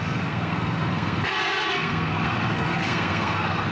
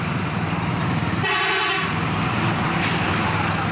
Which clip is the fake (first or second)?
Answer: first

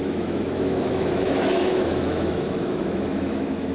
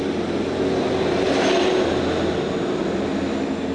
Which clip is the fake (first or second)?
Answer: first